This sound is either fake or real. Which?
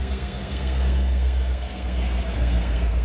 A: fake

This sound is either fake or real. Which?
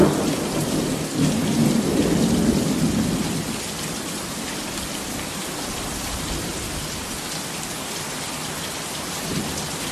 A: real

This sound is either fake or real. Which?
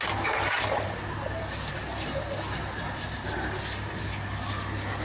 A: real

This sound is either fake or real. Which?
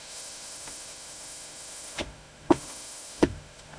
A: fake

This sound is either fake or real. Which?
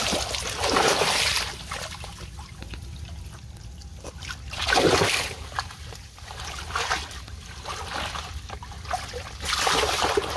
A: real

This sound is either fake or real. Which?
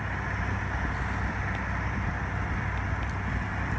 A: real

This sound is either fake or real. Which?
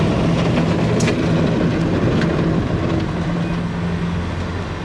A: real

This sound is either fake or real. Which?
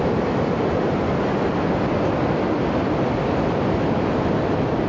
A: real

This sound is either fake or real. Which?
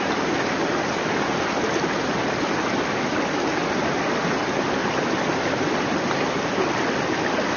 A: real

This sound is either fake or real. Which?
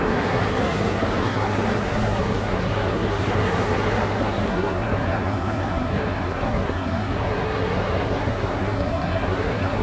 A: fake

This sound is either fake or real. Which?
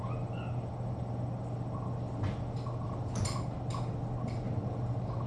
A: real